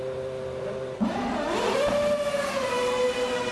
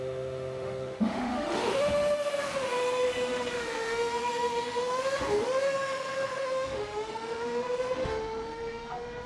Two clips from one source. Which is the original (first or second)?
first